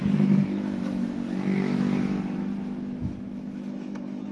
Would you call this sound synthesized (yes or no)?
yes